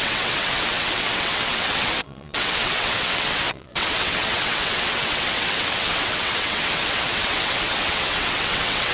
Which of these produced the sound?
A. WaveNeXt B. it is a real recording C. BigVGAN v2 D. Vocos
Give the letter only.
A